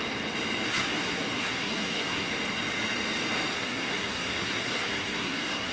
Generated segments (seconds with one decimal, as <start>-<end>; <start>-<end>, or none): 0.7-2.3; 3.5-5.7